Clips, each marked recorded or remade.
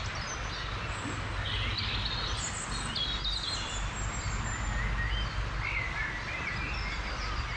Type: recorded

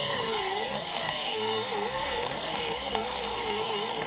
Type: remade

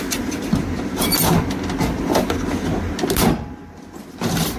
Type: recorded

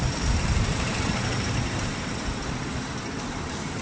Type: remade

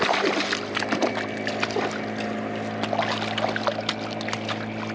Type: recorded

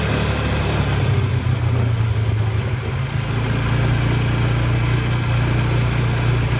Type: recorded